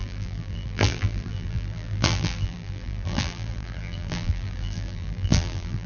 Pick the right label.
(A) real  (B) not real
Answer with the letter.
B